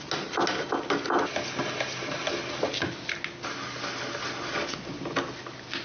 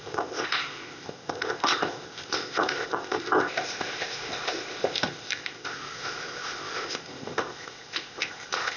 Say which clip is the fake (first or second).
second